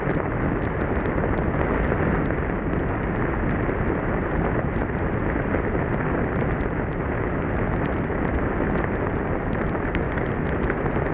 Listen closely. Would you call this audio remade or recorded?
recorded